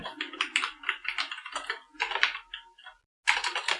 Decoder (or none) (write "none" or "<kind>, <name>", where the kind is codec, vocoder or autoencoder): none